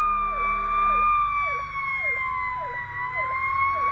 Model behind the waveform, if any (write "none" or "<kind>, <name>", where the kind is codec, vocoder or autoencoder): none